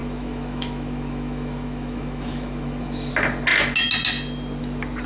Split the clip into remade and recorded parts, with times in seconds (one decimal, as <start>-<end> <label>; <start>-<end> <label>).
0.0-3.1 remade; 3.1-5.1 recorded